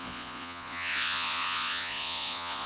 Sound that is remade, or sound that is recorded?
remade